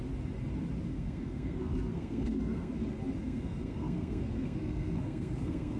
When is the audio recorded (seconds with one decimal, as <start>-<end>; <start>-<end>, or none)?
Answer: 0.0-0.9; 2.7-3.2